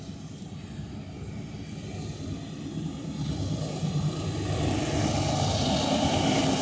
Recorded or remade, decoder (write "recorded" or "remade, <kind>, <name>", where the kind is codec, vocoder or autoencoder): recorded